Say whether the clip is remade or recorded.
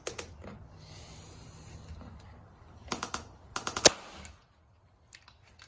recorded